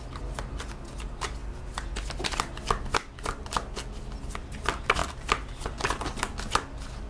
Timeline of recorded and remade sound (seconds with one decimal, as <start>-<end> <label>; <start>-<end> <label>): 0.0-7.1 recorded